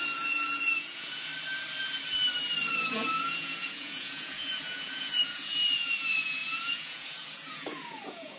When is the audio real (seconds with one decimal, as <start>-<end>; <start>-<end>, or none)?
1.3-2.7

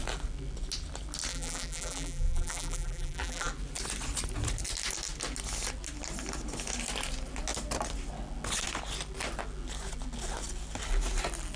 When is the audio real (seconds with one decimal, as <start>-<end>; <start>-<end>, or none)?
0.0-1.3; 3.5-11.6

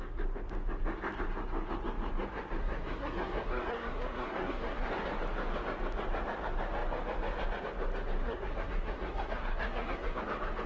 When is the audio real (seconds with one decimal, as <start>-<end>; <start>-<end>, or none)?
0.0-2.6; 4.9-8.2; 10.2-10.7

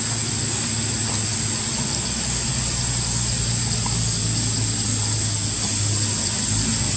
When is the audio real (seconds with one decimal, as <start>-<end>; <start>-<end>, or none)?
0.0-7.0

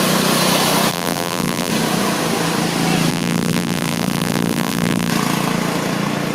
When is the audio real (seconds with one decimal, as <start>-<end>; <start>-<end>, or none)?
0.0-0.9; 1.7-3.1; 5.1-6.3

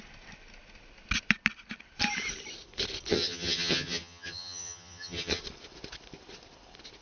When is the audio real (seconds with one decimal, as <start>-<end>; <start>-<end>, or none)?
0.0-3.1; 5.4-7.0

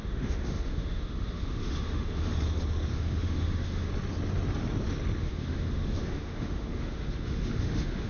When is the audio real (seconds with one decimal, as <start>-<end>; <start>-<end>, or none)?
2.3-2.9; 3.9-5.2

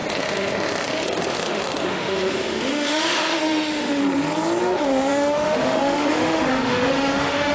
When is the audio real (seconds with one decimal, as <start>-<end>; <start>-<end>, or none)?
4.0-4.6